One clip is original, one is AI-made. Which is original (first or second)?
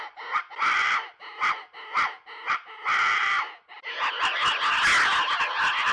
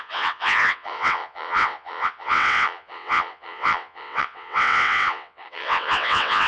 first